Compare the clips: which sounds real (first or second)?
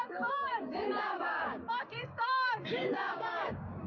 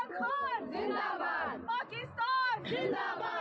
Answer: second